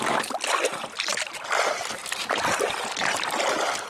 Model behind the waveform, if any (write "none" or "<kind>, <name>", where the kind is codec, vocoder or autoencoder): vocoder, BigVGAN v2